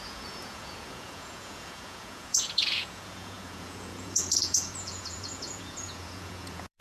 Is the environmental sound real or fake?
fake